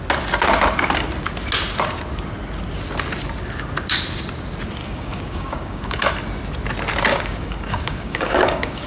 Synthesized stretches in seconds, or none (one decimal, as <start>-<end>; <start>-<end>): 4.8-6.1; 7.1-8.9